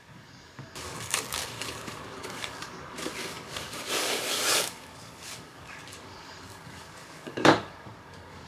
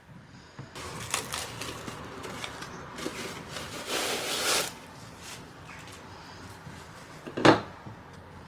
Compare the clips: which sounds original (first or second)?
second